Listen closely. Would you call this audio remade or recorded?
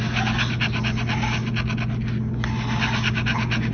recorded